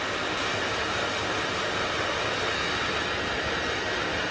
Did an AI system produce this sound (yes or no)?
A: no